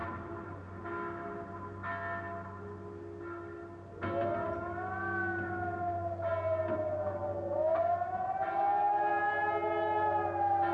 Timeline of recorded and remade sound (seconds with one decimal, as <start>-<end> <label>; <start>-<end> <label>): 0.0-0.8 remade; 0.8-10.7 recorded